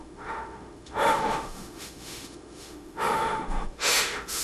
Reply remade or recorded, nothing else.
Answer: remade